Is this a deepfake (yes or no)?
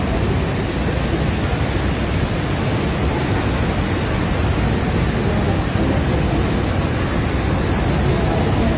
no